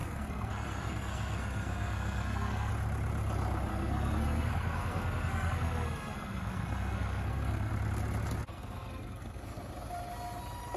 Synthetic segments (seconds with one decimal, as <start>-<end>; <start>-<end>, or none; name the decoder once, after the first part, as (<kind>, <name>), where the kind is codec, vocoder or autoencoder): 0.0-2.7 (codec, SNAC); 3.7-7.7; 8.5-9.7